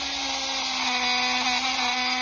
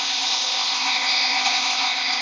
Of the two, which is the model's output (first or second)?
second